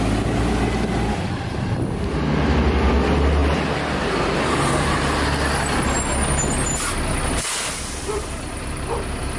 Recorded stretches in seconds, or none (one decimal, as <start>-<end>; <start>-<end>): 0.0-9.4